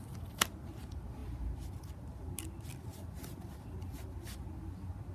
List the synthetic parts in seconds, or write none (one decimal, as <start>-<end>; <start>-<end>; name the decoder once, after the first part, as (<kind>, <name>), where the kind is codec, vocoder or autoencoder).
none